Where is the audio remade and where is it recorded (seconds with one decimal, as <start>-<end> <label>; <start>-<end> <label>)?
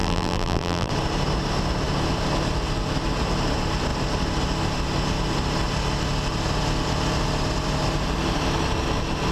0.0-0.9 remade; 0.9-9.3 recorded